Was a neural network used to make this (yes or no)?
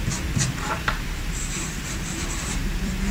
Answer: yes